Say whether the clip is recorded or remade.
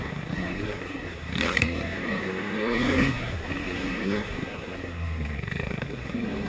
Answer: remade